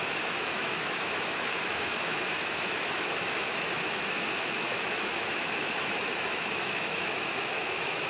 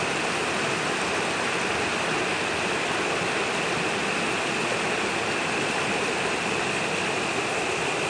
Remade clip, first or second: first